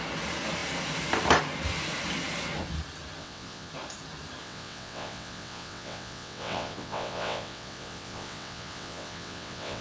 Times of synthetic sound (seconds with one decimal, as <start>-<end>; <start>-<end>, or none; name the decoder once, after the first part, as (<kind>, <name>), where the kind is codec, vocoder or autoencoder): 3.2-3.7 (vocoder, WaveNeXt); 4.4-9.8